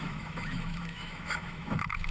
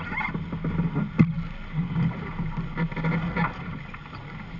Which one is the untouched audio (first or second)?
second